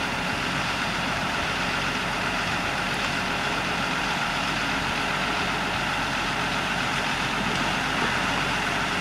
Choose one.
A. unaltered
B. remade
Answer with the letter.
B